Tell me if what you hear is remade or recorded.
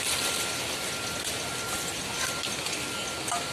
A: recorded